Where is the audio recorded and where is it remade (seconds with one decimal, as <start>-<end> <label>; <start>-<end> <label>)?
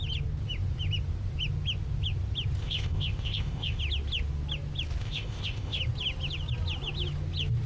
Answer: 0.0-2.6 recorded; 2.6-3.8 remade; 3.8-5.0 recorded; 5.0-5.8 remade; 5.8-7.7 recorded